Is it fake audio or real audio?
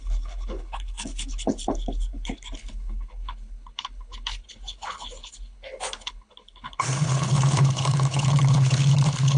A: fake